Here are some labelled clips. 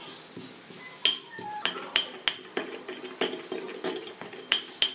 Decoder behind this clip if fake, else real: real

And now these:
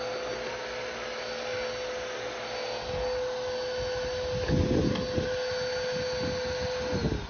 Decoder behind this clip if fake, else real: real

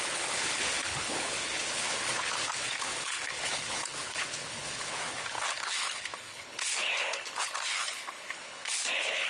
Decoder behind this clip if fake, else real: fake, codec, HILCodec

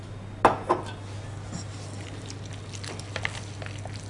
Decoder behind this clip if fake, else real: real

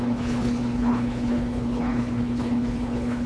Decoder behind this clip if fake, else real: fake, codec, HILCodec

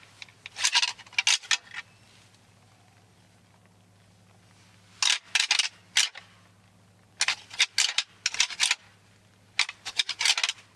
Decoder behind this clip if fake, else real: real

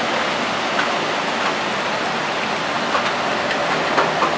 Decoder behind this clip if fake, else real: real